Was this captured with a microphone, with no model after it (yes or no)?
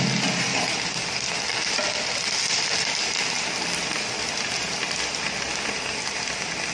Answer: yes